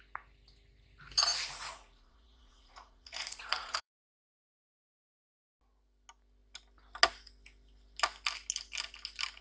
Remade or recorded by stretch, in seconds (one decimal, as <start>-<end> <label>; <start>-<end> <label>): 0.0-1.3 recorded; 1.3-5.5 remade; 5.5-9.4 recorded